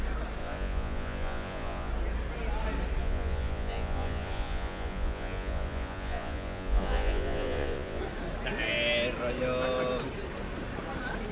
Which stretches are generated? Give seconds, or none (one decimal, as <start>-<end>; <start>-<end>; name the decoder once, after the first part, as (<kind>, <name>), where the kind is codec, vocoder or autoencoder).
0.4-1.9 (vocoder, Vocos); 3.0-8.0